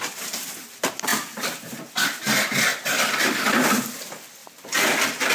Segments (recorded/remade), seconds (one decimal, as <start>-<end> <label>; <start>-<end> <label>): 0.0-1.1 recorded; 1.1-1.9 remade; 1.9-2.7 recorded; 2.7-3.3 remade; 3.3-4.4 recorded; 4.4-5.3 remade